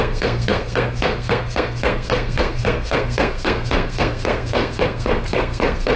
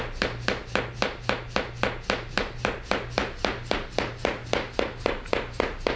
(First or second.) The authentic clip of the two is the second